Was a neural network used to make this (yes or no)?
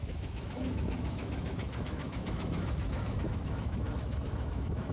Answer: yes